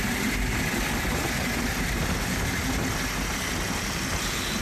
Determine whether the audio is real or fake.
real